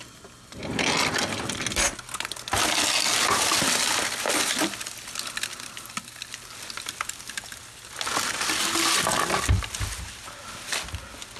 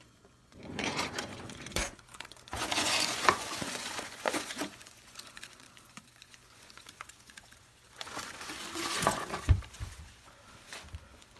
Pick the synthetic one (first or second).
second